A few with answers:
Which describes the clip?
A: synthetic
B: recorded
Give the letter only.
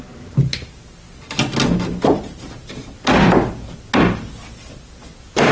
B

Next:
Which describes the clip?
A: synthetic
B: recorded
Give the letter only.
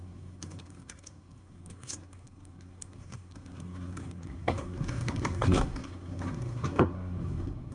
A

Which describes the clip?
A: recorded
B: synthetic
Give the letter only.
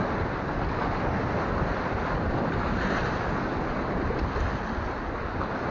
A